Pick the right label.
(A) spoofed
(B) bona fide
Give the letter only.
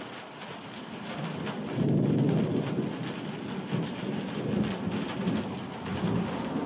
B